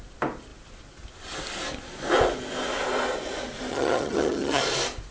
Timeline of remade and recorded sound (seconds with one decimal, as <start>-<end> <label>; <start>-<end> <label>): 0.0-3.7 recorded; 3.7-4.6 remade; 4.6-5.1 recorded